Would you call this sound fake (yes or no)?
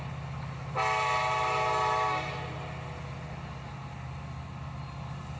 no